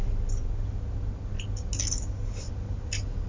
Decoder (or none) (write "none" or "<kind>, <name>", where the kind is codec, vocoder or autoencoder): none